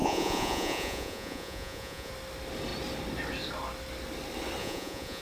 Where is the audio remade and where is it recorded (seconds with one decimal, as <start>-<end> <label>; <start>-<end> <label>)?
0.0-2.1 remade; 2.1-4.6 recorded; 4.6-5.2 remade

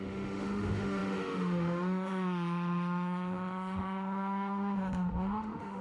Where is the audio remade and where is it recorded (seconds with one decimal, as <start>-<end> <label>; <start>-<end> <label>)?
0.0-5.8 remade

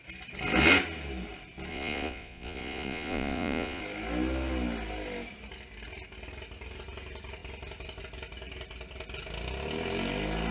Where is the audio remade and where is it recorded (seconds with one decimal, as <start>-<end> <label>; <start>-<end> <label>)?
0.0-1.7 recorded; 1.7-3.8 remade; 3.8-10.5 recorded

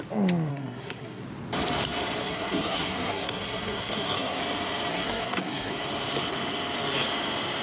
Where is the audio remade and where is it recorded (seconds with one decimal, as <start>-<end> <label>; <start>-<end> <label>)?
0.0-0.5 recorded; 0.5-1.2 remade; 1.2-2.2 recorded; 2.2-4.4 remade; 4.4-4.9 recorded; 4.9-5.7 remade; 5.7-7.6 recorded